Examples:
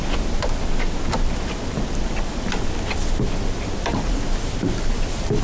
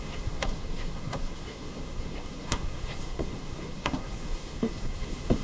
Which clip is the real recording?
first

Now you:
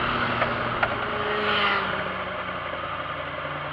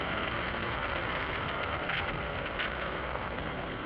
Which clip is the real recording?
first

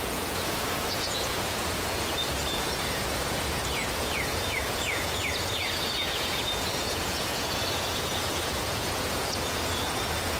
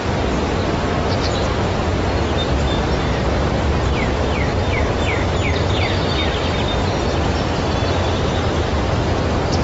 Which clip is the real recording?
second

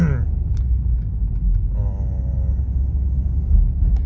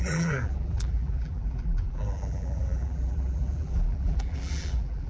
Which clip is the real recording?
first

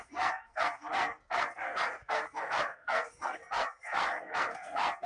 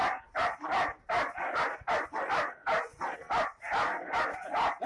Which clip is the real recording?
second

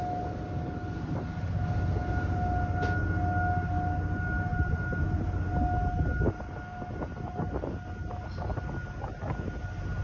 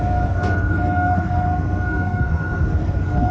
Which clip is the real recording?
first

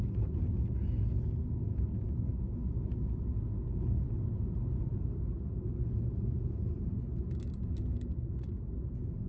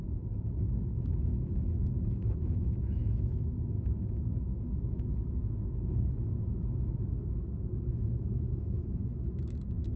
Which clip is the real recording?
first